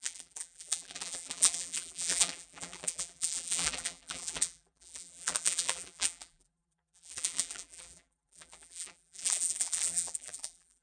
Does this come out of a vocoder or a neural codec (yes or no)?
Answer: yes